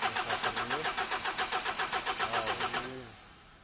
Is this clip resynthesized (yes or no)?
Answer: no